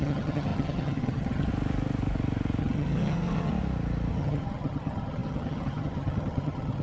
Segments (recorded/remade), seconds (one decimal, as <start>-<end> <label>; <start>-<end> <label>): 0.0-1.5 remade; 1.5-2.6 recorded; 2.6-3.5 remade; 3.5-4.1 recorded; 4.1-6.8 remade